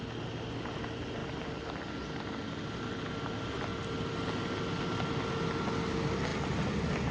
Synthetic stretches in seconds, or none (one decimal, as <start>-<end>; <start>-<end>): none